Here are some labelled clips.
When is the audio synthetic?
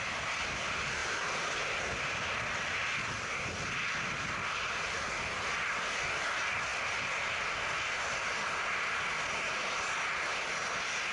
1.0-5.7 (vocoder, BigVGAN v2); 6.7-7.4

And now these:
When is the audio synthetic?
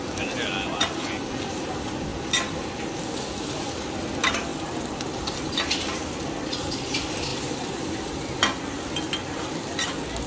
0.0-2.1 (vocoder, BigVGAN v2); 3.0-4.5; 5.2-10.3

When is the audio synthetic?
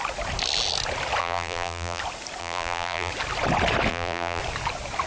1.2-2.0 (vocoder, BigVGAN v2); 2.4-3.1; 3.9-4.4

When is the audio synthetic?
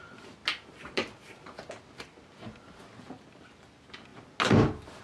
none